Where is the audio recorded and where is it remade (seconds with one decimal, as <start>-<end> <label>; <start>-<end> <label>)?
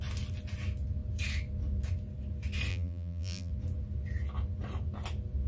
0.0-2.7 recorded; 2.7-3.5 remade; 3.5-5.5 recorded